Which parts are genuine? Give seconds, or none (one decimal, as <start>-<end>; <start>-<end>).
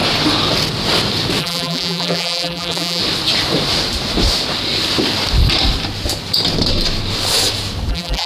0.0-1.4; 3.0-7.9